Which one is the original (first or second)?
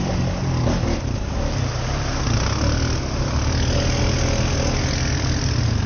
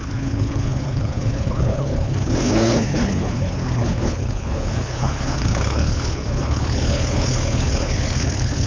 first